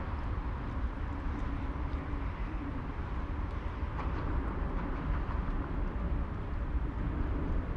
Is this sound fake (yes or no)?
yes